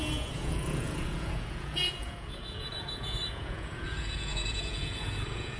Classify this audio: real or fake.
fake